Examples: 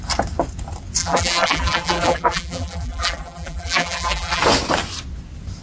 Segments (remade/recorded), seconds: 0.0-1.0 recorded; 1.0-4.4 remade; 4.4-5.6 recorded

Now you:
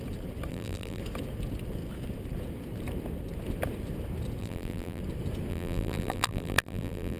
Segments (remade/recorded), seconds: 0.0-0.5 recorded; 0.5-1.0 remade; 1.0-4.4 recorded; 4.4-5.0 remade; 5.0-5.5 recorded; 5.5-7.2 remade